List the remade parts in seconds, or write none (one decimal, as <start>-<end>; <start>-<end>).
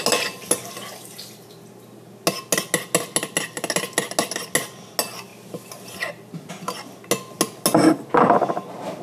none